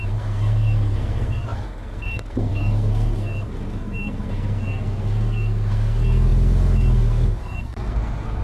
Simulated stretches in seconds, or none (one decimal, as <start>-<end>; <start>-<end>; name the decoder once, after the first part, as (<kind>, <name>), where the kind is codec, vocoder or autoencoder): 0.0-8.4 (codec, SNAC)